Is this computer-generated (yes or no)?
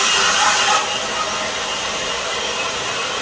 no